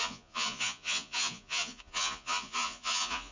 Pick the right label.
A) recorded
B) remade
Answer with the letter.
B